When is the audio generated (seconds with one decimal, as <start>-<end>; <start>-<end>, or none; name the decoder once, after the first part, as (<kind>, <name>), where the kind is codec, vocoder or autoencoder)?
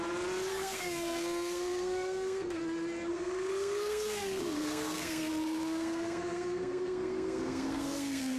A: 0.5-2.6 (codec, SNAC); 3.1-8.4